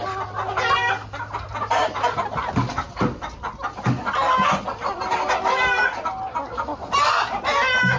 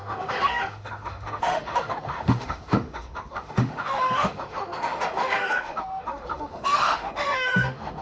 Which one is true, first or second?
first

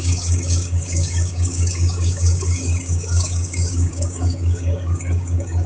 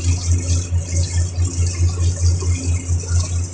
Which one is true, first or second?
second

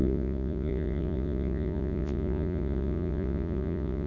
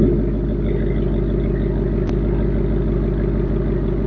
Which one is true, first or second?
second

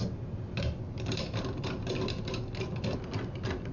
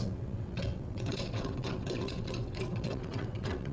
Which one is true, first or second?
first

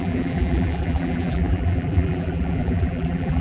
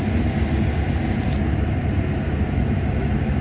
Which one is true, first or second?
second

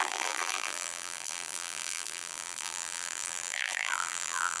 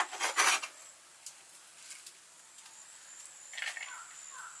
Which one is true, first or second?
second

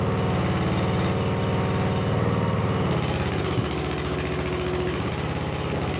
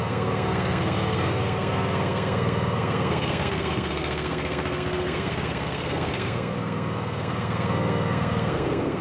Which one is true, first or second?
first